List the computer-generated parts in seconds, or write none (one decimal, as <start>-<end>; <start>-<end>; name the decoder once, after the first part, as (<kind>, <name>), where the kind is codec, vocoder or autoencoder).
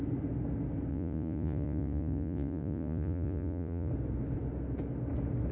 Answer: 0.9-3.9 (vocoder, Vocos)